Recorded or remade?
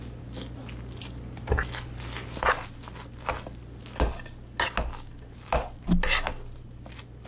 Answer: recorded